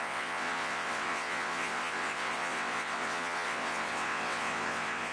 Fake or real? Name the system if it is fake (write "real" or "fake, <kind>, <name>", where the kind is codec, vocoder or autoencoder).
fake, vocoder, WaveNeXt